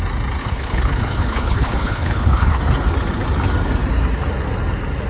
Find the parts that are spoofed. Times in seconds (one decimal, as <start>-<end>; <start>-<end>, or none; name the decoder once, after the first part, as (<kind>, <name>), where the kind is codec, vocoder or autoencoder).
0.4-2.6 (codec, HILCodec)